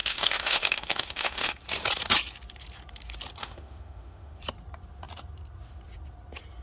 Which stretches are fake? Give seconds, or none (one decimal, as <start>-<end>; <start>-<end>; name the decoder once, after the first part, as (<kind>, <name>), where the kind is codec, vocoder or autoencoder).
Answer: 0.0-1.5 (autoencoder, DAC-VAE); 3.4-4.4

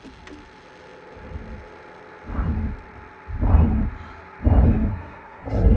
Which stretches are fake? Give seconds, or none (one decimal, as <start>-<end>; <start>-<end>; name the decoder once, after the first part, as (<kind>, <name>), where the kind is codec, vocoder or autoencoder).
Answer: 4.9-5.8 (codec, SNAC)

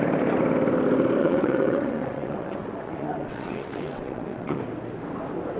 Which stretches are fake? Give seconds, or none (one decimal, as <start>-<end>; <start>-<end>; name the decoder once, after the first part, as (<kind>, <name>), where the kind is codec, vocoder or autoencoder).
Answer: 1.2-4.6 (vocoder, WaveNeXt)

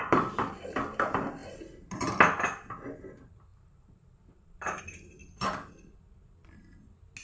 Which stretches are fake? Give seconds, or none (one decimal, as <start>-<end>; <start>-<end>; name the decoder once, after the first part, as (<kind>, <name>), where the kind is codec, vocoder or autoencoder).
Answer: 3.5-4.8 (vocoder, BigVGAN v2)